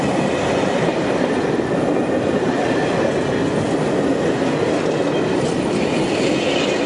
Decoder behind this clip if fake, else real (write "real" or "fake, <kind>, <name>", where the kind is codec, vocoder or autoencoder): real